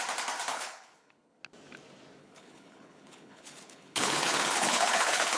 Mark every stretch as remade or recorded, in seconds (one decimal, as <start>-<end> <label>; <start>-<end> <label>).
0.0-0.5 recorded; 0.5-1.4 remade; 1.4-2.2 recorded; 2.2-5.4 remade